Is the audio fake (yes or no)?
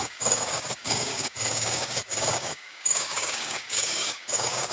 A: yes